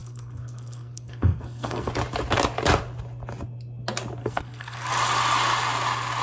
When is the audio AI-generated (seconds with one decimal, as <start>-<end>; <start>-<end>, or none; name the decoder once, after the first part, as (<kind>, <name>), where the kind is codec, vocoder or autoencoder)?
0.0-1.9 (codec, SNAC); 4.2-4.9